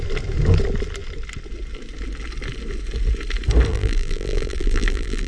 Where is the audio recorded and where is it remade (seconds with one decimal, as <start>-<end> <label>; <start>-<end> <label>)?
0.0-3.7 recorded; 3.7-5.3 remade